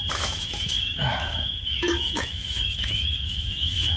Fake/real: fake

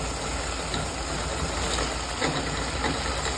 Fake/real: real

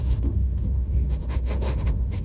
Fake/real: fake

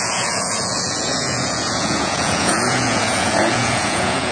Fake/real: fake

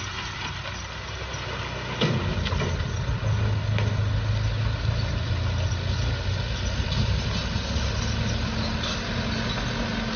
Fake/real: real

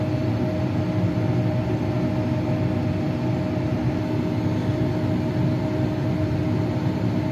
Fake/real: real